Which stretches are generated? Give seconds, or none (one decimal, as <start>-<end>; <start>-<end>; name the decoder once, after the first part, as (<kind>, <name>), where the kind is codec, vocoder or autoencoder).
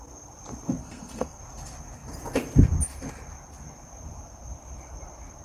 0.8-1.4 (codec, SNAC)